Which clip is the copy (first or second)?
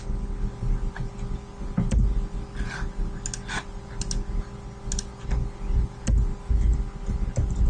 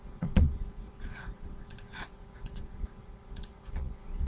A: second